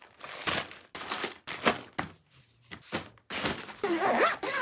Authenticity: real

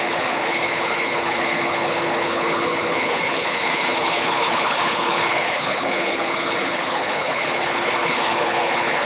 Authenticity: fake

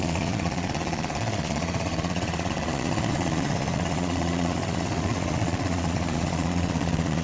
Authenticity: fake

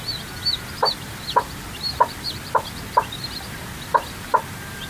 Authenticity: real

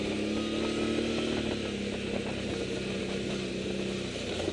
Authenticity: real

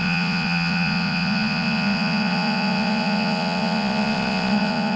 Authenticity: fake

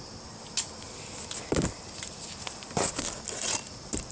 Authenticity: real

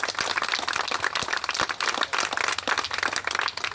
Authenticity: real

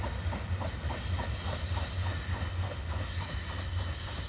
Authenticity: real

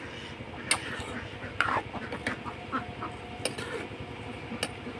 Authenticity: real